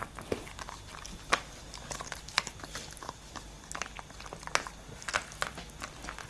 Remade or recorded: recorded